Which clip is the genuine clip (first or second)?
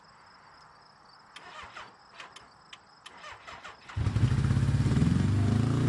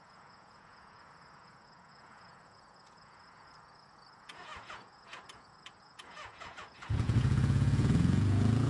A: first